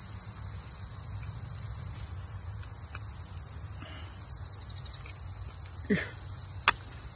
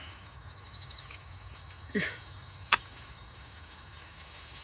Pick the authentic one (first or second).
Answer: first